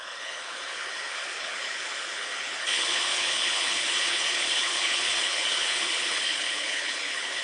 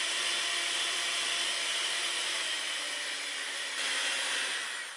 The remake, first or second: first